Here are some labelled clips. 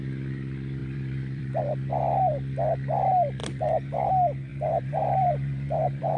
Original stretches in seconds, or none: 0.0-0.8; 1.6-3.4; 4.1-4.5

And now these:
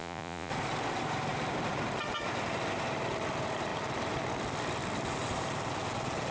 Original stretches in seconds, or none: 0.5-6.3

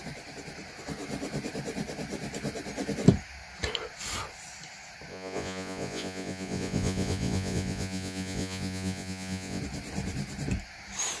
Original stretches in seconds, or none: 0.0-5.1; 9.6-11.2

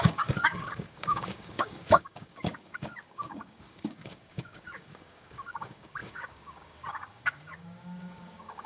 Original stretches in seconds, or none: none